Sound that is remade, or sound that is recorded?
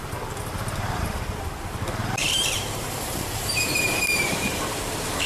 remade